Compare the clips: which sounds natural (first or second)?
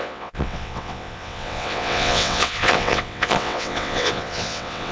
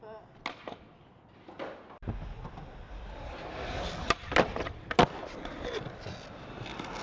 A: second